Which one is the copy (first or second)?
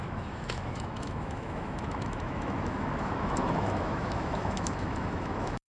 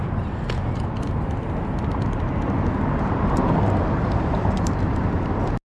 first